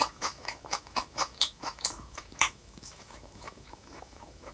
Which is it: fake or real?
fake